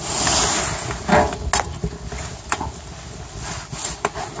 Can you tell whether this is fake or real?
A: real